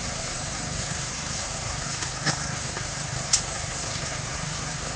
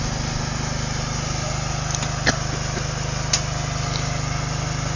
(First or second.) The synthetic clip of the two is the first